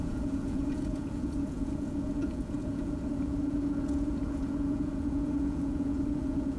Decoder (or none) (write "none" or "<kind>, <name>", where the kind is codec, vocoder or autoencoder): vocoder, Vocos